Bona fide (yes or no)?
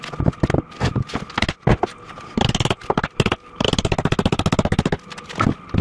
yes